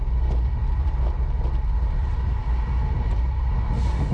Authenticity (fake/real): real